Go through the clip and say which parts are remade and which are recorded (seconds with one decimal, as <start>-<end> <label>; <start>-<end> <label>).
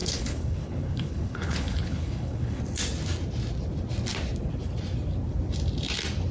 0.0-2.6 remade; 2.6-6.3 recorded